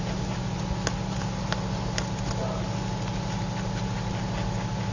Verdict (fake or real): real